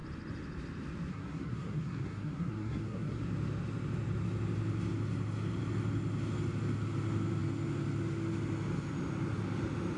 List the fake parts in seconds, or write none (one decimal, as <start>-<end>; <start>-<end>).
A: 1.1-3.2